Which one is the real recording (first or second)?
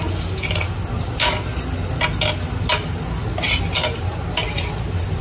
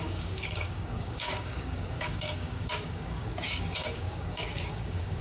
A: first